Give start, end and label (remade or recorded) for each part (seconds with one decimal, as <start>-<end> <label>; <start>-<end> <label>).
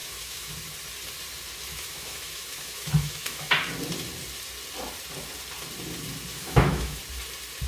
0.0-0.5 remade; 0.5-1.7 recorded; 1.7-3.5 remade; 3.5-6.3 recorded; 6.3-7.0 remade; 7.0-7.7 recorded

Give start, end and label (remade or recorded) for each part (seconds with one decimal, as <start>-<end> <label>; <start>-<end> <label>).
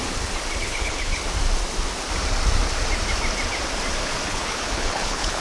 0.0-0.6 recorded; 0.6-1.2 remade; 1.2-4.3 recorded; 4.3-5.4 remade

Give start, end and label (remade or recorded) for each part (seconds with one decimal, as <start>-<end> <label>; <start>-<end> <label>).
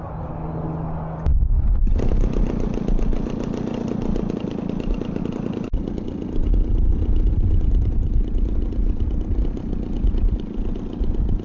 0.0-11.4 recorded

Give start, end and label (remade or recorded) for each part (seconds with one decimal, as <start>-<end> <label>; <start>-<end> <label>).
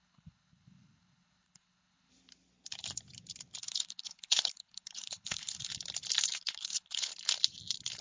0.0-2.1 remade; 2.1-3.6 recorded; 3.6-5.7 remade; 5.7-6.3 recorded; 6.3-7.1 remade; 7.1-8.0 recorded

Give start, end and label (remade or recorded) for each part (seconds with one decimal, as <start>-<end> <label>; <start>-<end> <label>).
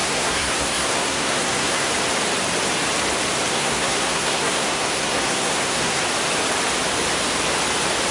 0.0-1.9 remade; 1.9-3.5 recorded; 3.5-6.0 remade; 6.0-8.1 recorded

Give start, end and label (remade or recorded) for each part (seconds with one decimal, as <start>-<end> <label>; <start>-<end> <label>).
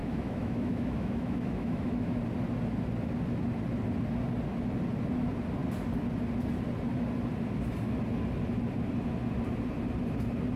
0.0-2.2 remade; 2.2-10.6 recorded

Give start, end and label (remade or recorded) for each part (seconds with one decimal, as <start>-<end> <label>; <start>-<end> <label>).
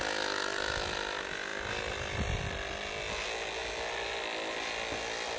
0.0-5.4 recorded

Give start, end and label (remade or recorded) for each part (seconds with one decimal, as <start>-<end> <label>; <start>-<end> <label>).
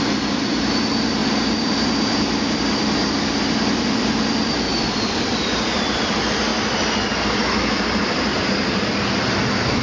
0.0-6.5 remade; 6.5-7.2 recorded; 7.2-8.3 remade; 8.3-9.3 recorded; 9.3-9.8 remade